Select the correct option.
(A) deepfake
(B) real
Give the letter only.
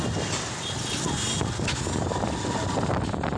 B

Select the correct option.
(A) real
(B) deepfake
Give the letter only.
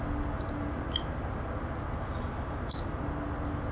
A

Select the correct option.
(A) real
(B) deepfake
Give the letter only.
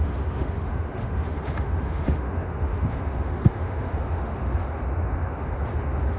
B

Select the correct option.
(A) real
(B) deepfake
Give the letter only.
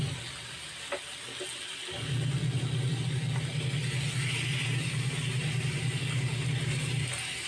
A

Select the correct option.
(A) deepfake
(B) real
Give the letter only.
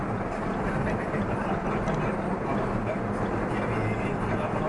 B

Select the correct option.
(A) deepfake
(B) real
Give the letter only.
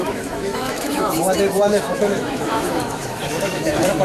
A